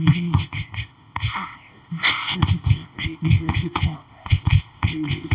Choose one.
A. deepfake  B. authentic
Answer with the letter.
A